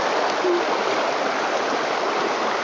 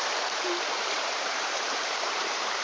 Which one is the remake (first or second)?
second